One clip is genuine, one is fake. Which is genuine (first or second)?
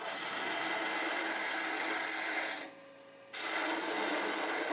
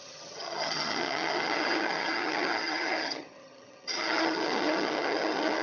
first